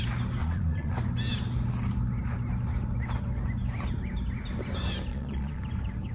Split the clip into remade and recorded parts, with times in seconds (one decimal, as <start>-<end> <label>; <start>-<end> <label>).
0.0-0.4 recorded; 0.4-0.9 remade; 0.9-5.1 recorded; 5.1-5.6 remade; 5.6-6.1 recorded